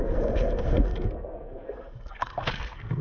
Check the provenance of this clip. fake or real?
fake